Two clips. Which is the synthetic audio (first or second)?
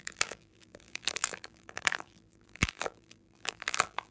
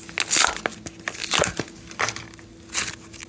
first